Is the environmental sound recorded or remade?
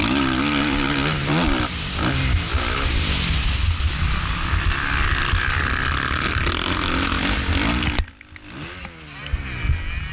recorded